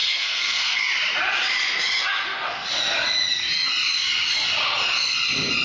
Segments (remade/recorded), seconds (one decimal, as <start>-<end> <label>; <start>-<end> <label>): 0.0-0.8 remade; 0.8-5.6 recorded